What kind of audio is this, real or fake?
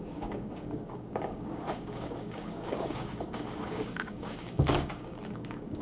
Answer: fake